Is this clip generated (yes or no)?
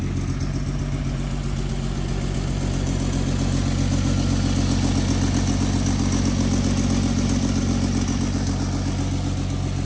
no